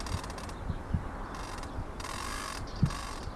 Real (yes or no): no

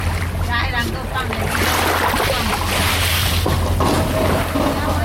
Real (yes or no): yes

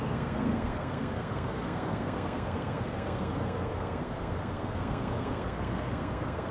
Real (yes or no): no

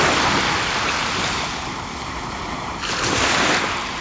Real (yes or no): yes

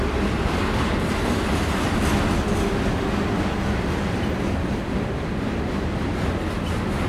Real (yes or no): yes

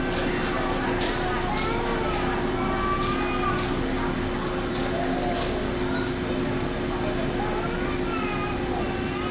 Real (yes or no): yes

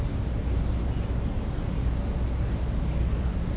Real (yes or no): yes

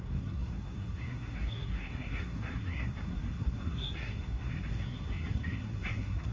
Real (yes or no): no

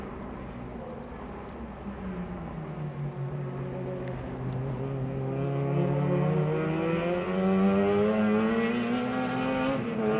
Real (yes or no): yes